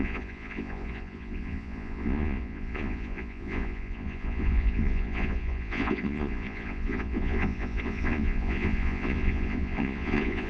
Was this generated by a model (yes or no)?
yes